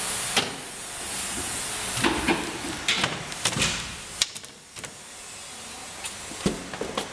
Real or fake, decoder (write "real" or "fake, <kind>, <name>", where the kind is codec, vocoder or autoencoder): real